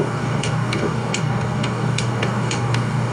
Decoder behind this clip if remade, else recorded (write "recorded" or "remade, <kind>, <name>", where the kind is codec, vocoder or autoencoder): remade, codec, DAC